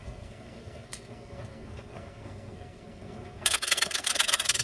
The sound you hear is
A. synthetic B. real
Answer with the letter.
A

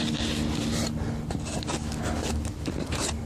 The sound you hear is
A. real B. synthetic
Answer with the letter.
A